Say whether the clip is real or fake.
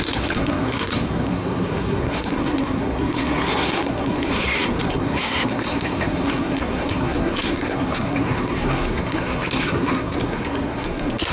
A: fake